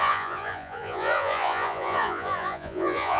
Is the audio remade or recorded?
remade